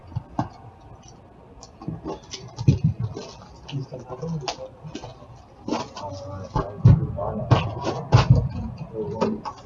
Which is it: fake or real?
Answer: real